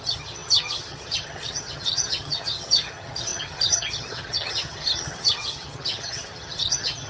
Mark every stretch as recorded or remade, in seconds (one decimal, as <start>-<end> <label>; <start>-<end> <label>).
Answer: 0.0-7.1 remade